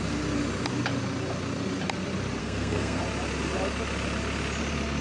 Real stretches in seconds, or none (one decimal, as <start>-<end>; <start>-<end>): 0.0-2.4; 3.0-5.0